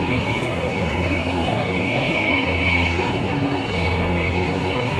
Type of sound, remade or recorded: remade